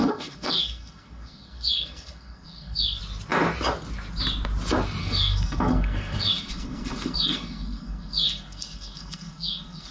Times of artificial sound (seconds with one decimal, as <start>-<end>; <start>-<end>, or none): 0.0-3.0; 5.0-9.9